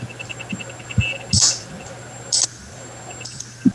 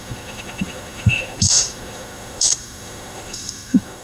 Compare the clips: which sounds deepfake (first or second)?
second